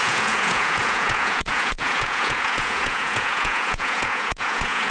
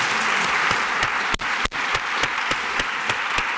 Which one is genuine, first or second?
second